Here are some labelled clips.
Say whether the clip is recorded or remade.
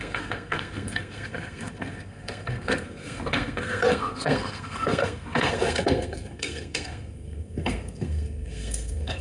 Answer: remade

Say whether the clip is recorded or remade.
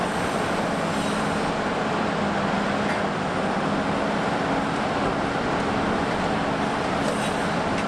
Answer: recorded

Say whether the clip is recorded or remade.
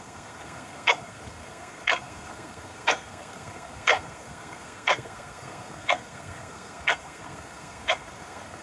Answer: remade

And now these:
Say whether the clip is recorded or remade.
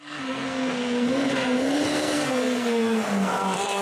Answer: remade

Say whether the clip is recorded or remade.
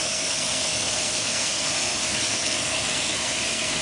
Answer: remade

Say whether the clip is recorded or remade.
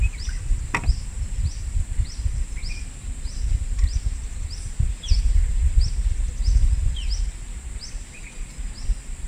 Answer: recorded